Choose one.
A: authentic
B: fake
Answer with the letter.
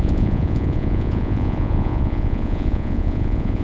B